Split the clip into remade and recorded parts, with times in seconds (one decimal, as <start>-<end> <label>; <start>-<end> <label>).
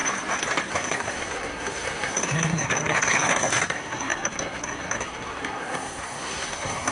0.0-0.7 recorded; 0.7-6.9 remade